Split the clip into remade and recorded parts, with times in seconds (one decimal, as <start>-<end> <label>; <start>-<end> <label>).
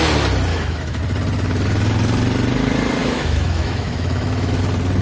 0.0-0.5 recorded; 0.5-1.0 remade; 1.0-3.0 recorded; 3.0-4.6 remade; 4.6-5.0 recorded